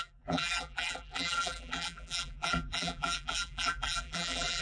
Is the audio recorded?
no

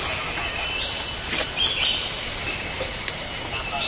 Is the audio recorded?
no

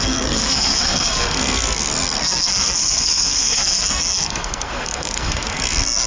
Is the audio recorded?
no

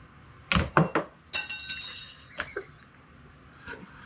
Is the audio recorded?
yes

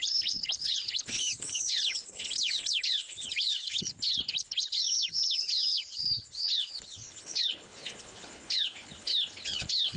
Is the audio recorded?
no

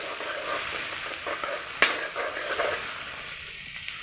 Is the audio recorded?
yes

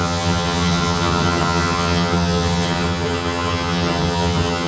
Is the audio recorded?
no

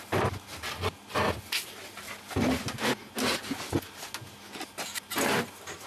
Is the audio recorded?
yes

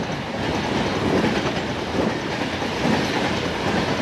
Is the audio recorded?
yes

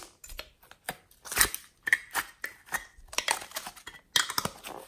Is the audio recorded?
yes